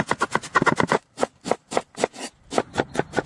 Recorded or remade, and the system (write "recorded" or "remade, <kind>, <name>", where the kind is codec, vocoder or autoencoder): recorded